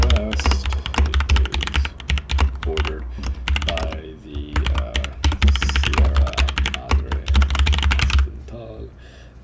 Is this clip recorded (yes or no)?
yes